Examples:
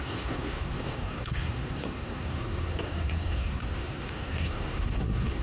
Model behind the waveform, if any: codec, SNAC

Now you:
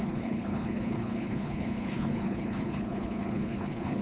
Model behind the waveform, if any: codec, HILCodec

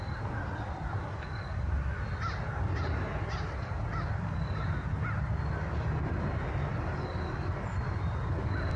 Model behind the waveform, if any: none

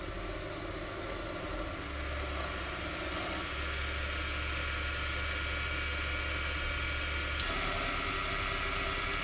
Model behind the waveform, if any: none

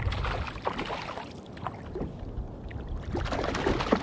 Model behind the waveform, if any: none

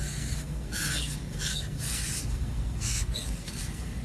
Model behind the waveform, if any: codec, SNAC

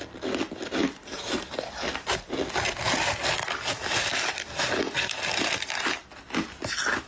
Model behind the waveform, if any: none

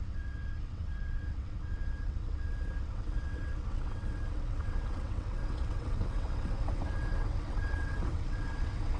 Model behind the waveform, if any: vocoder, WaveNeXt